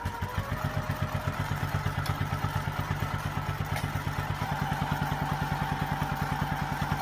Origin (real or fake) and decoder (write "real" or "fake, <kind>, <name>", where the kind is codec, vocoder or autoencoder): real